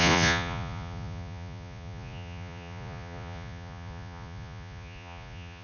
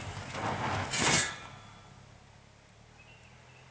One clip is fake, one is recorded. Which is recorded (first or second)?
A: second